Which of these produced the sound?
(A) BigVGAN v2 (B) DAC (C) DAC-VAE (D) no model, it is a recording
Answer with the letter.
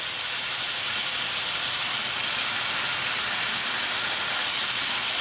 D